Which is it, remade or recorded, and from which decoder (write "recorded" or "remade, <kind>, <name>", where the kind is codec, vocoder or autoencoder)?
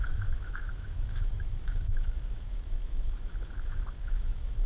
remade, autoencoder, DAC-VAE